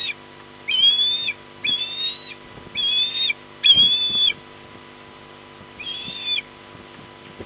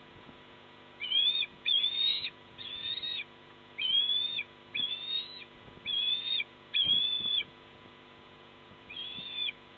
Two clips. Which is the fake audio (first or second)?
second